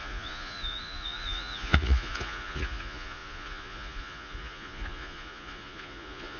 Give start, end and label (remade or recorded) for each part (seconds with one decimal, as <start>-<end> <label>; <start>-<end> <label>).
0.0-6.4 remade